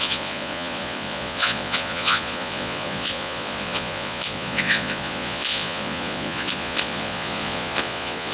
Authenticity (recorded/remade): remade